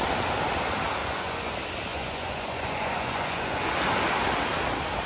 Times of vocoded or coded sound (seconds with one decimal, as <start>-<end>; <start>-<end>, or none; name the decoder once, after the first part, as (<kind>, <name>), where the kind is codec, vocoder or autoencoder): 1.0-1.5 (vocoder, Vocos); 1.9-3.7